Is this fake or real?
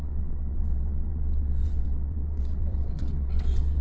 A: fake